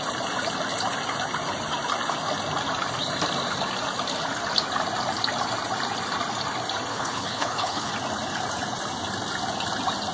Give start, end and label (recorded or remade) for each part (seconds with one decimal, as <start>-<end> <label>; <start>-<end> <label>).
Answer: 0.0-6.9 recorded; 6.9-7.9 remade; 7.9-10.1 recorded